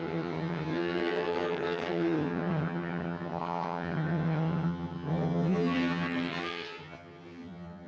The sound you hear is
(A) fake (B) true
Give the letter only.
A